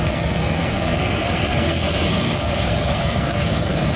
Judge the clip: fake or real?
fake